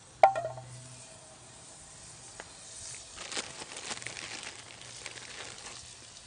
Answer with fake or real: real